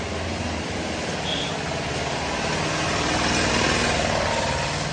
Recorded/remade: recorded